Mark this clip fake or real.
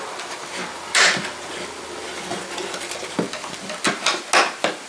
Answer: real